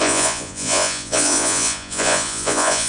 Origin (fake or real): fake